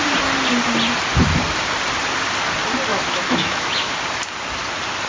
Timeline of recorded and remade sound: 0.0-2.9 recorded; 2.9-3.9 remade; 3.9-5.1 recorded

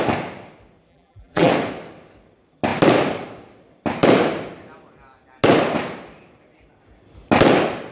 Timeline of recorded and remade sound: 0.0-0.9 recorded; 0.9-1.5 remade; 1.5-7.9 recorded

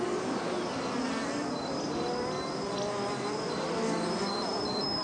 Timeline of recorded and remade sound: 0.0-5.0 recorded

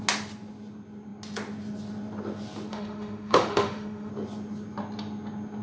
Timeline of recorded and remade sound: 0.0-2.7 recorded; 2.7-4.1 remade; 4.1-5.6 recorded

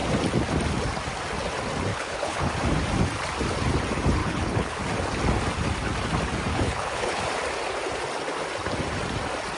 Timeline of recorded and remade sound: 0.0-1.9 recorded; 1.9-2.5 remade; 2.5-4.2 recorded; 4.2-4.8 remade; 4.8-6.5 recorded; 6.5-7.2 remade; 7.2-9.6 recorded

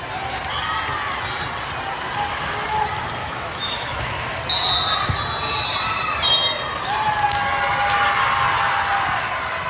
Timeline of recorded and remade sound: 0.0-3.2 recorded; 3.2-4.4 remade; 4.4-9.7 recorded

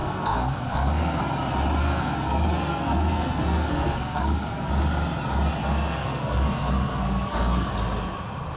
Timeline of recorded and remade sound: 0.0-1.2 remade; 1.2-1.8 recorded; 1.8-4.7 remade; 4.7-5.6 recorded; 5.6-7.7 remade; 7.7-8.6 recorded